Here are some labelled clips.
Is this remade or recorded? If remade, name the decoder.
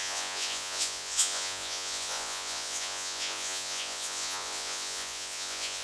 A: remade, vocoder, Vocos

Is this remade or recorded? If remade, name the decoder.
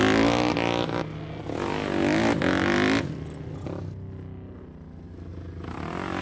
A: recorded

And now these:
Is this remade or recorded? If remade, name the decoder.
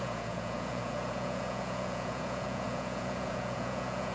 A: remade, vocoder, Vocos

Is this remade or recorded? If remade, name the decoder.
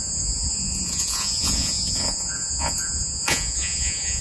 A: remade, vocoder, Vocos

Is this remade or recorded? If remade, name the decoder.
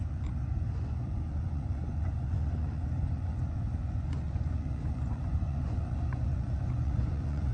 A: remade, vocoder, Vocos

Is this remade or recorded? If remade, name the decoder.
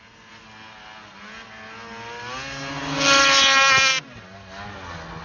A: recorded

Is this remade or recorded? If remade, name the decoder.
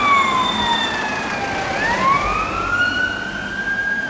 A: recorded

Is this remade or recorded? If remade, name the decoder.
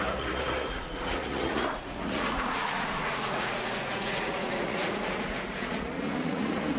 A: remade, vocoder, Vocos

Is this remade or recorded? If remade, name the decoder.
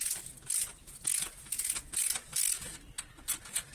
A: recorded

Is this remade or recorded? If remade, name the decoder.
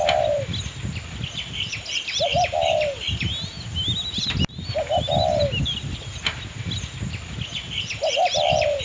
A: recorded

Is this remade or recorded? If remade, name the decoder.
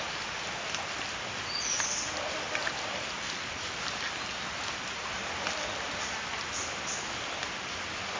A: recorded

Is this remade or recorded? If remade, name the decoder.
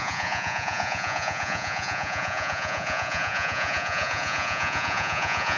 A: remade, vocoder, Vocos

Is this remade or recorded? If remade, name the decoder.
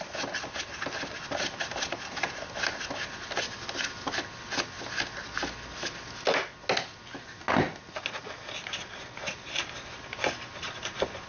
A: recorded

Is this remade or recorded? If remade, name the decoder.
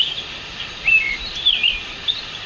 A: recorded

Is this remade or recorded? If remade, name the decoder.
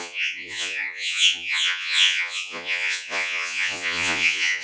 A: remade, vocoder, Vocos